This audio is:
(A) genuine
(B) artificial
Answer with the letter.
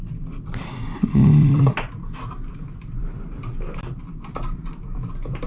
B